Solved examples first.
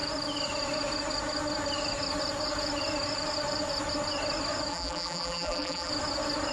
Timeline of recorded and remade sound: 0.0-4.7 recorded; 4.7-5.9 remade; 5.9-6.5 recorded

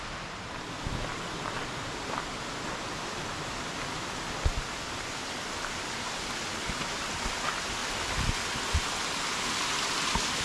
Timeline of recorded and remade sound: 0.0-10.4 recorded

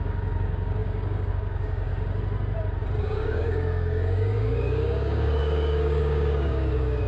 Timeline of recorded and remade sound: 0.0-1.9 remade; 1.9-3.0 recorded; 3.0-7.1 remade

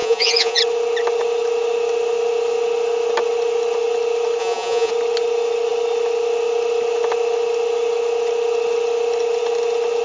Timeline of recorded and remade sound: 0.0-0.6 remade; 0.6-4.4 recorded; 4.4-4.9 remade; 4.9-10.0 recorded

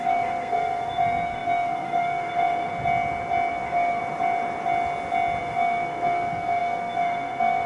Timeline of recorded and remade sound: 0.0-2.7 remade; 2.7-3.5 recorded; 3.5-4.0 remade; 4.0-5.4 recorded; 5.4-7.7 remade